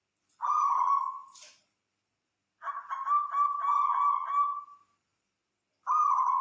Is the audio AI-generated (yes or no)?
no